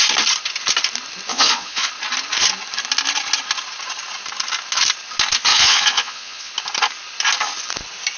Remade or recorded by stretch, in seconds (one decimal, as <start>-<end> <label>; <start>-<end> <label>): 0.0-1.3 recorded; 1.3-1.9 remade; 1.9-5.5 recorded; 5.5-6.5 remade; 6.5-8.2 recorded